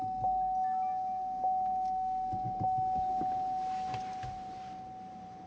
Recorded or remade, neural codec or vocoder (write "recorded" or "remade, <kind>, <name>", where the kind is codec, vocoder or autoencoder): recorded